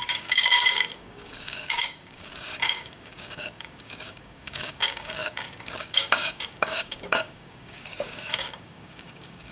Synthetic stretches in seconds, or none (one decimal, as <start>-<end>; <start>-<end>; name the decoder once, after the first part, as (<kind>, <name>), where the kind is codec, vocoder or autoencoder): 0.0-9.5 (codec, DAC)